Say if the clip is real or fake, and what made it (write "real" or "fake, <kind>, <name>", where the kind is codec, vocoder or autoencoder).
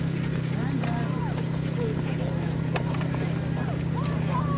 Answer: real